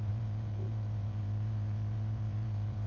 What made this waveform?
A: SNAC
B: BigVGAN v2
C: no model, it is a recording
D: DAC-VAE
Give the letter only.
B